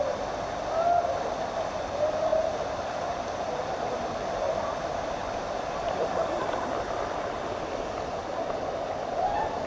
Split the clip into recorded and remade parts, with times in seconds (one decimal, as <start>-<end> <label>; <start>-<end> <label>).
0.0-2.3 recorded; 2.3-3.9 remade; 3.9-5.2 recorded; 5.2-7.0 remade; 7.0-9.7 recorded